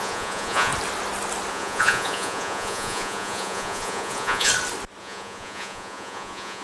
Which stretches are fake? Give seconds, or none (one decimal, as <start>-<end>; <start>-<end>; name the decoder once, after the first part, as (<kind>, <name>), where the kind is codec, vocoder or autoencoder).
0.0-0.7 (vocoder, Vocos); 1.5-4.5; 5.0-6.6

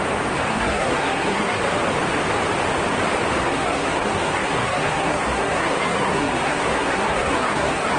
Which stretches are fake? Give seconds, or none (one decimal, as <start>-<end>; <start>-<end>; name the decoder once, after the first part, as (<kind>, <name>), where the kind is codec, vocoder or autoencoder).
0.4-1.6 (codec, SNAC); 3.4-8.0